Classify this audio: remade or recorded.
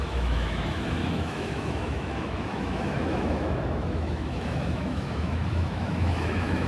remade